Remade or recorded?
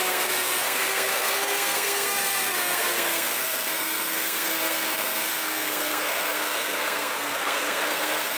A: remade